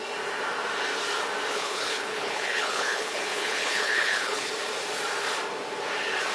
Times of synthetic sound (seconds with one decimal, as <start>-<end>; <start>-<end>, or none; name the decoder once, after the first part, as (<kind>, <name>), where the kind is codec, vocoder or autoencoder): 1.5-4.5 (codec, HILCodec)